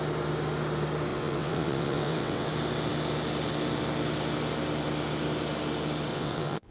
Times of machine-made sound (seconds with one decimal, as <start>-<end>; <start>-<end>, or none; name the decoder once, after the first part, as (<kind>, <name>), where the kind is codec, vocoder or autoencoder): 1.1-2.5 (vocoder, WaveNeXt); 6.1-6.7